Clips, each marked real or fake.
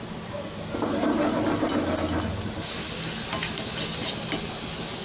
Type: real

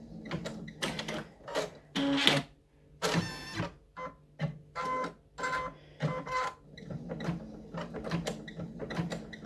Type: real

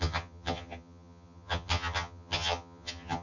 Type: fake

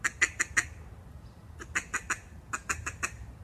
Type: real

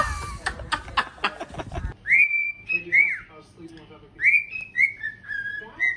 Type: real